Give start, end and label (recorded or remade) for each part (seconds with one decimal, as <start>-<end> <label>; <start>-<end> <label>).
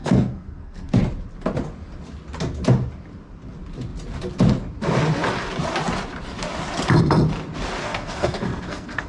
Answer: 0.0-1.0 remade; 1.0-7.8 recorded; 7.8-9.1 remade